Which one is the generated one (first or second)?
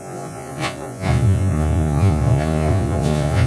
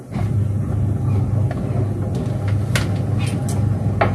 first